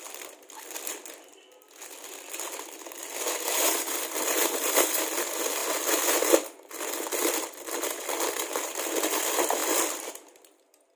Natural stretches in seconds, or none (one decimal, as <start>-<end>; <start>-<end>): 1.0-3.6; 9.6-11.0